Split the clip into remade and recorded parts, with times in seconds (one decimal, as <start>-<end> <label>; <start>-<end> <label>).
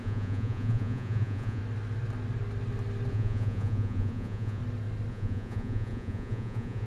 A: 0.0-1.6 remade; 1.6-3.1 recorded; 3.1-4.6 remade; 4.6-5.1 recorded; 5.1-6.9 remade